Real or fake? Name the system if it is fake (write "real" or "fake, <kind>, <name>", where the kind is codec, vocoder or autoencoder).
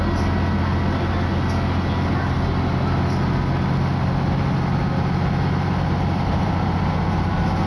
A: real